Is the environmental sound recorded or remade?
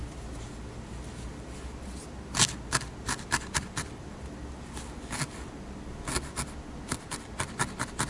recorded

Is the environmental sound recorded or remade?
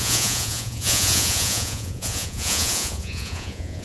remade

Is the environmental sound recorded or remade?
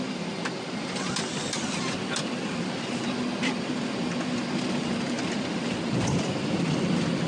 recorded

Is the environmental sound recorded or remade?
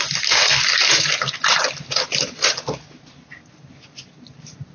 recorded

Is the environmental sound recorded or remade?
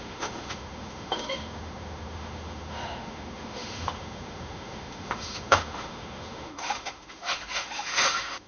remade